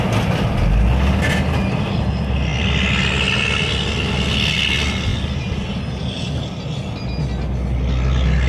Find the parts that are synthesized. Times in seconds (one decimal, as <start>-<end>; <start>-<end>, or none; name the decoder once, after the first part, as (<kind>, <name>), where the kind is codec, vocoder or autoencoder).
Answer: none